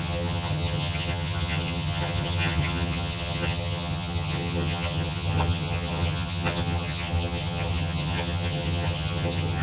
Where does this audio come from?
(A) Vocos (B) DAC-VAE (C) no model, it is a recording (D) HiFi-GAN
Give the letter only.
D